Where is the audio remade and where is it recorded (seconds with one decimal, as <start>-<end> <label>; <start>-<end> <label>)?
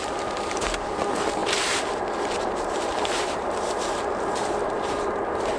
0.0-5.6 remade